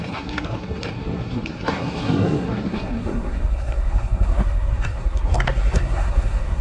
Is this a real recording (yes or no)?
no